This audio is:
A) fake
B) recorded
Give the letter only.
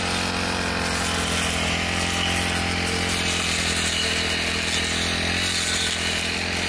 B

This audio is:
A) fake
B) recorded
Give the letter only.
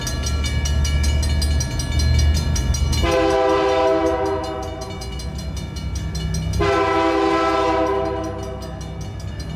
B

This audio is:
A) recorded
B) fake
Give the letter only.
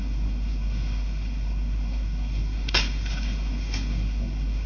B